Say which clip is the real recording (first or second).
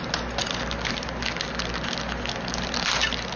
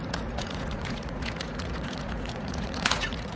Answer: first